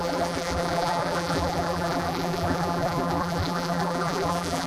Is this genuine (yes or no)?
no